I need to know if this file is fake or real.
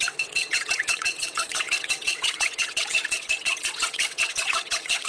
fake